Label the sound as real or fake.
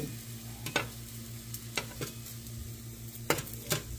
real